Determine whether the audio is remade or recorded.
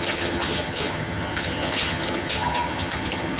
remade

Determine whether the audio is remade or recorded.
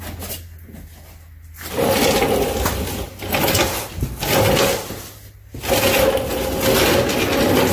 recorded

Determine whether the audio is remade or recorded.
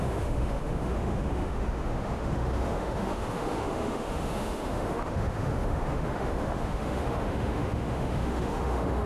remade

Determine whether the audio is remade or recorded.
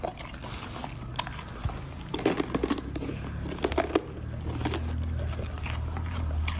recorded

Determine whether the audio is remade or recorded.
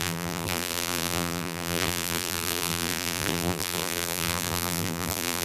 remade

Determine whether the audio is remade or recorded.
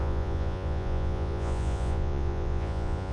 remade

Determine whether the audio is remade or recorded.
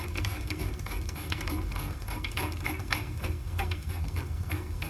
remade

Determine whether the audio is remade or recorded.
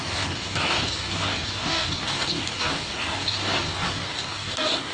remade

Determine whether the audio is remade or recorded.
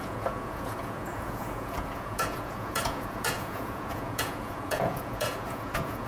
remade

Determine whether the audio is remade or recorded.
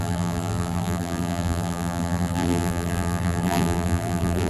remade